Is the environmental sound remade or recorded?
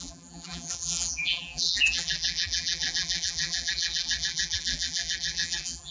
remade